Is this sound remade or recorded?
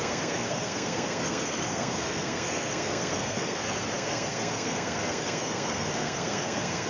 remade